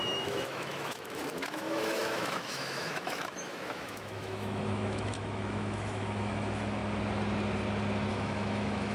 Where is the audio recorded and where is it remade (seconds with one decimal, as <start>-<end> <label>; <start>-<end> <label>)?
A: 0.0-6.8 remade; 6.8-8.1 recorded; 8.1-8.9 remade